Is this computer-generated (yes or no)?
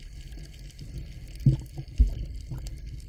no